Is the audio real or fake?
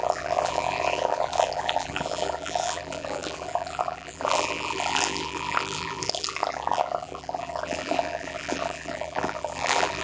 fake